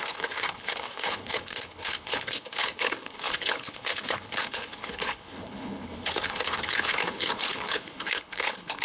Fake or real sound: fake